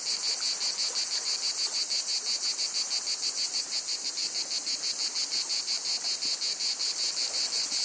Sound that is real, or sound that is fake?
real